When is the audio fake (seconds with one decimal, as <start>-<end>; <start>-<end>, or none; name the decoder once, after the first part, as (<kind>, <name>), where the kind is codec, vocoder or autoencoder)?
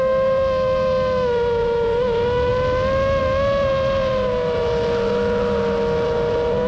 none